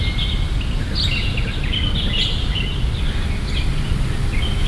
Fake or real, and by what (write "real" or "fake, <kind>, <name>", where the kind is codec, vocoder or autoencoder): real